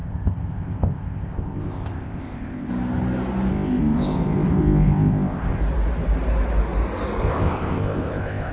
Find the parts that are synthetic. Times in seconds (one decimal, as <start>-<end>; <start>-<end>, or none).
0.0-2.7; 3.5-5.6; 7.2-8.5